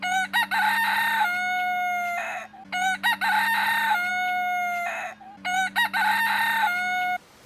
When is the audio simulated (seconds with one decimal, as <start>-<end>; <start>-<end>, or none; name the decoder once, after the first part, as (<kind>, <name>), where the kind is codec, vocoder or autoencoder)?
none